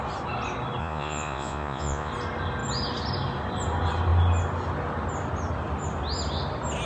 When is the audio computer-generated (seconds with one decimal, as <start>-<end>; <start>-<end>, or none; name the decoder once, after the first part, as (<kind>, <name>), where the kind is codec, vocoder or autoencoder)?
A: 0.8-2.1 (vocoder, Vocos)